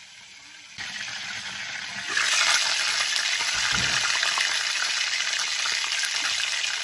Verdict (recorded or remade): recorded